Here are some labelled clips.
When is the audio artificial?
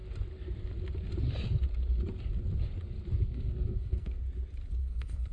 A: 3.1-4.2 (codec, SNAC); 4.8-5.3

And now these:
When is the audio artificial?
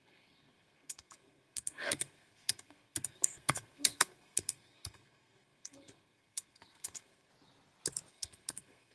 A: 0.0-7.3 (codec, SNAC); 8.1-8.9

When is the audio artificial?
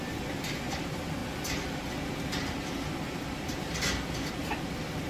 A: none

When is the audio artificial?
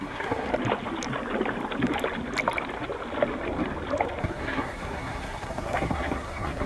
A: 0.0-0.5 (codec, SNAC); 4.2-6.7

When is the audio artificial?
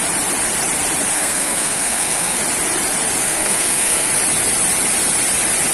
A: 1.1-2.4 (codec, SNAC); 3.2-4.1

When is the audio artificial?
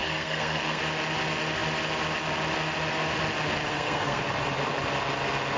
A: 0.0-0.8 (codec, SNAC); 3.7-4.2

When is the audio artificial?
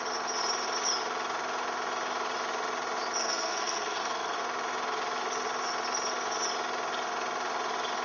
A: 3.2-4.4 (codec, SNAC)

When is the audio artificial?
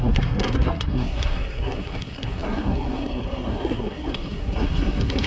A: 0.0-5.3 (codec, SNAC)